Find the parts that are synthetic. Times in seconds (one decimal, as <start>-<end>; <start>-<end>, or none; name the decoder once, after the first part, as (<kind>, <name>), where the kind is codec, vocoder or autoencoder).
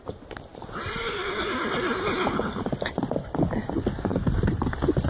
none